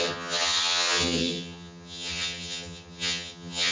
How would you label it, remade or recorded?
remade